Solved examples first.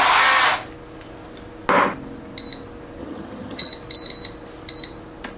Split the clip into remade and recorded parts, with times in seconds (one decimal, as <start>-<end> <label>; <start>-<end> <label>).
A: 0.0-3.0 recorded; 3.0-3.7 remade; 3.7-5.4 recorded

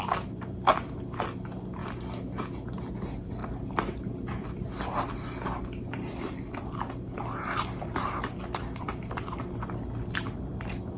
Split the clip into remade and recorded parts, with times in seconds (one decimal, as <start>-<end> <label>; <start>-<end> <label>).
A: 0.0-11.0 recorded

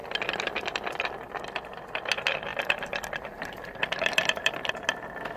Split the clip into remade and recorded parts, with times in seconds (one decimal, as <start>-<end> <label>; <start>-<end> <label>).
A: 0.0-1.4 remade; 1.4-2.5 recorded; 2.5-4.7 remade; 4.7-5.4 recorded